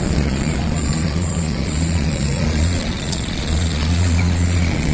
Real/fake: fake